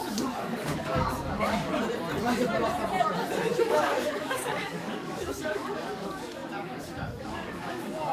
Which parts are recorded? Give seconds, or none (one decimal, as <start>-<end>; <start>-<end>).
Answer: 1.7-3.6

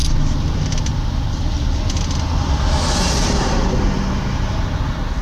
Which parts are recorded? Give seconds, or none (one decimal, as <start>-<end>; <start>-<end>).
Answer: 0.0-5.2

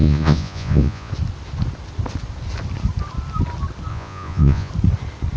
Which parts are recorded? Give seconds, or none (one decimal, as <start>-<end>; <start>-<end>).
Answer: 1.1-3.9; 4.7-5.4

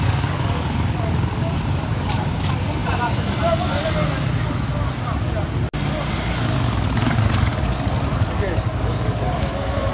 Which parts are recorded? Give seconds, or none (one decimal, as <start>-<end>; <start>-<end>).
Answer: 2.8-6.3; 7.5-8.1

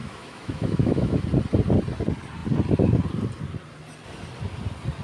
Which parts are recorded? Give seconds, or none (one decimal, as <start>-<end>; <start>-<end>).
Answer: 1.2-5.0